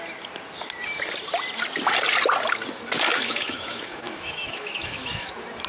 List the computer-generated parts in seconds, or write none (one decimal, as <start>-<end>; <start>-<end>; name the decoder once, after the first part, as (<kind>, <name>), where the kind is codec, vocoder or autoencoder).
3.1-5.3 (autoencoder, DAC-VAE)